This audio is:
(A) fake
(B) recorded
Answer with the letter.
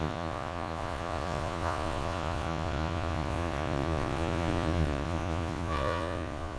A